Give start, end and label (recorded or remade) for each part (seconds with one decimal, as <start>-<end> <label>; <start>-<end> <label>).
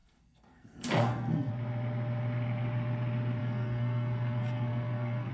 0.0-1.5 remade; 1.5-3.4 recorded; 3.4-5.3 remade